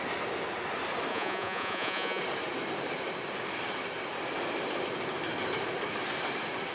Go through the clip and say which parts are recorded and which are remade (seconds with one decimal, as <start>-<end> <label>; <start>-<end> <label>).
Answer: 0.0-1.1 recorded; 1.1-2.2 remade; 2.2-6.7 recorded

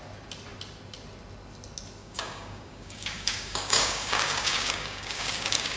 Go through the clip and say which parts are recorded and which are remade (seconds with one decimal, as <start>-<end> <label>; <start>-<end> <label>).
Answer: 0.0-2.0 recorded; 2.0-5.8 remade

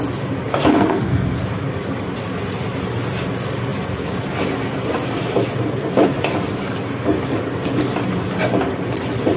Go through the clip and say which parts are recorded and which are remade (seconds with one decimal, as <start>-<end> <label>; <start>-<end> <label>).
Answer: 0.0-0.7 recorded; 0.7-1.4 remade; 1.4-9.4 recorded

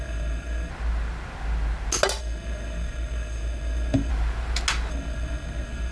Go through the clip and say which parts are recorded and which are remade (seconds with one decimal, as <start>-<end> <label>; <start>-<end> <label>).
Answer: 0.0-0.7 remade; 0.7-2.2 recorded; 2.2-4.1 remade; 4.1-4.9 recorded; 4.9-5.9 remade

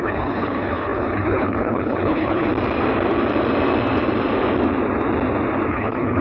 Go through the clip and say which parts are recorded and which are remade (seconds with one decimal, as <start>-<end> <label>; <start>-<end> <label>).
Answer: 0.0-2.5 remade; 2.5-5.7 recorded; 5.7-6.2 remade

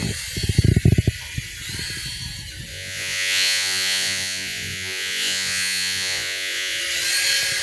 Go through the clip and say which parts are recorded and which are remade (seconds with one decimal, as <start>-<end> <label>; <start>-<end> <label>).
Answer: 0.0-2.7 recorded; 2.7-6.8 remade; 6.8-7.6 recorded

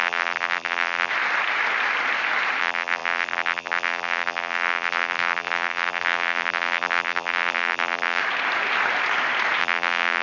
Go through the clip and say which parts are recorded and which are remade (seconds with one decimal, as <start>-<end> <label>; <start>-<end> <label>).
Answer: 0.0-1.1 remade; 1.1-2.6 recorded; 2.6-8.2 remade; 8.2-9.6 recorded; 9.6-10.2 remade

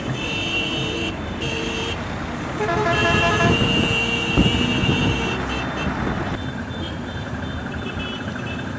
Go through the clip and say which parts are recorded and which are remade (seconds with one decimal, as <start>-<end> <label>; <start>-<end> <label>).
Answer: 0.0-3.0 remade; 3.0-6.3 recorded; 6.3-8.8 remade